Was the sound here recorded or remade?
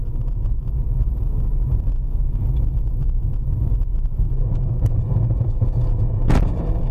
remade